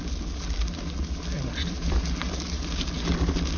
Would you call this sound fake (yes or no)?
no